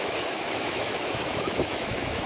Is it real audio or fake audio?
fake